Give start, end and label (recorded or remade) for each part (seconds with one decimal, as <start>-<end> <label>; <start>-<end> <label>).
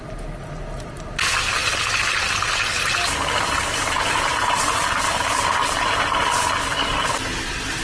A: 0.0-7.8 recorded